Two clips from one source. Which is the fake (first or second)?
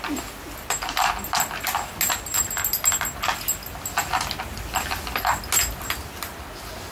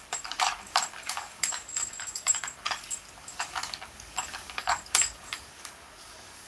second